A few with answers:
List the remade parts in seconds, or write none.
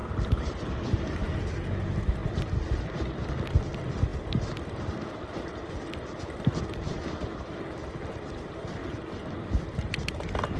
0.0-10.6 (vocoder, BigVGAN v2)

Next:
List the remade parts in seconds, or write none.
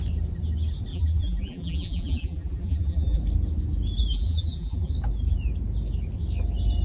0.9-3.2 (vocoder, BigVGAN v2); 4.1-4.9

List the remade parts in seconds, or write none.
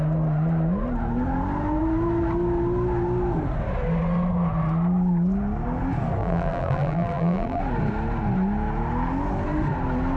6.2-7.6 (vocoder, BigVGAN v2)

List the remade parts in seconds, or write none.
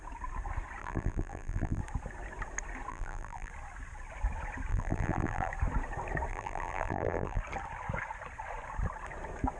0.8-1.8 (vocoder, BigVGAN v2); 2.9-3.5; 4.7-5.5; 6.3-7.4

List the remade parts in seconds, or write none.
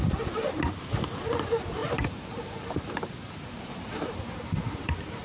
1.8-5.2 (vocoder, BigVGAN v2)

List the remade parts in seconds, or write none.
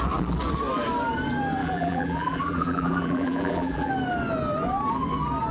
1.6-3.9 (vocoder, BigVGAN v2)